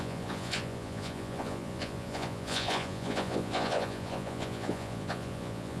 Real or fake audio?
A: fake